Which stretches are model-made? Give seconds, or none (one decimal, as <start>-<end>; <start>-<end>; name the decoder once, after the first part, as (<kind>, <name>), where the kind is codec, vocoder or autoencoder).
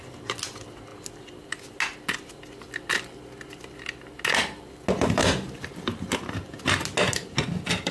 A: 5.2-6.1 (vocoder, BigVGAN v2)